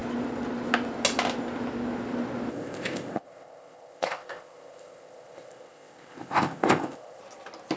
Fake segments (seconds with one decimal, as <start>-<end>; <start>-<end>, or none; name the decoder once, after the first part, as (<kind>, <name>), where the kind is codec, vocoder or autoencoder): 2.5-7.2 (codec, ZipCodec)